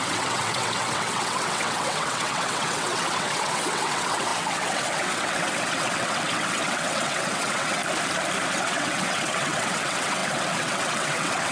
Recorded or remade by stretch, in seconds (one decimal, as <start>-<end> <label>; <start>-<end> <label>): 0.0-7.8 remade; 7.8-8.5 recorded; 8.5-11.5 remade